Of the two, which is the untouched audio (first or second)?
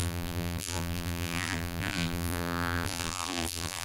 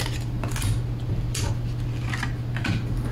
second